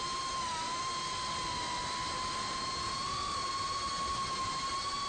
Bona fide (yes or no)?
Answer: yes